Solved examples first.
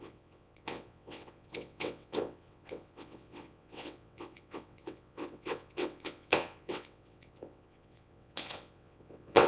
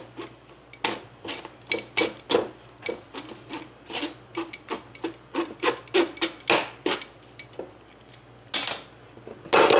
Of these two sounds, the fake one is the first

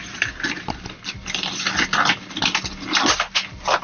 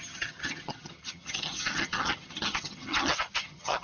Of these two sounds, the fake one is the second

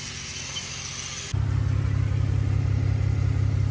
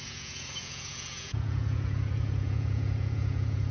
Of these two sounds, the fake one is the second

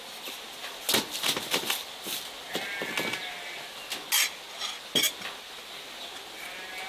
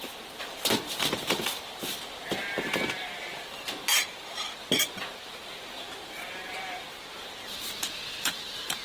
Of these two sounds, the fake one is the second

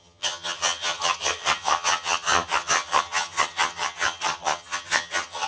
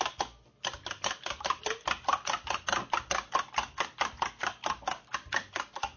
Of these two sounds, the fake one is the first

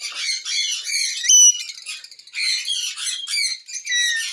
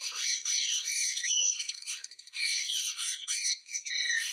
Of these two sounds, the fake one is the second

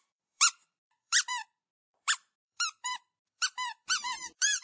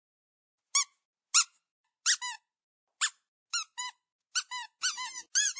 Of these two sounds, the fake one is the first